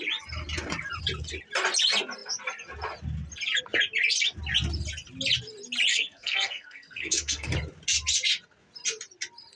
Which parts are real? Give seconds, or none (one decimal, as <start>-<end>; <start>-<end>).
0.0-5.9; 7.5-9.6